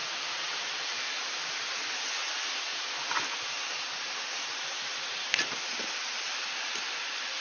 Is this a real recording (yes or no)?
yes